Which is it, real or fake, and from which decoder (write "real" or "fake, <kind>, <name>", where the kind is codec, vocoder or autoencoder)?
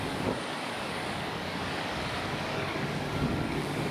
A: fake, codec, DAC